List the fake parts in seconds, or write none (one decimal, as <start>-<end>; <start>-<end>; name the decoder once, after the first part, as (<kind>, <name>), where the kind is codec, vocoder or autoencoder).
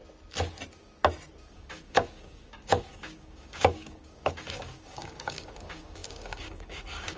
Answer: 1.5-7.2 (codec, DAC)